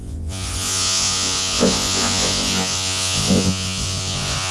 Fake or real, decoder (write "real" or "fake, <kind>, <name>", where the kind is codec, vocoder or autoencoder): fake, vocoder, Vocos